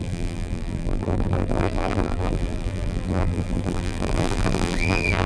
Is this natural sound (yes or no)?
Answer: no